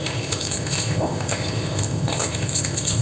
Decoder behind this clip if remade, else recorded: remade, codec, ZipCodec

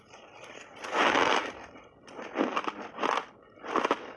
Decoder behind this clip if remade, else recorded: recorded